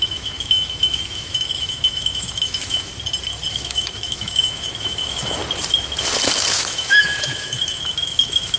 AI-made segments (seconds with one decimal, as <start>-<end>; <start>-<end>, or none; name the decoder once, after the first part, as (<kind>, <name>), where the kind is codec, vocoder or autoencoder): 0.0-2.9 (autoencoder, DAC-VAE); 3.5-5.4; 6.5-8.6